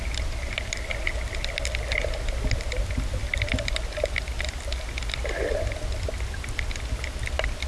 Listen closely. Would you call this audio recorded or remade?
recorded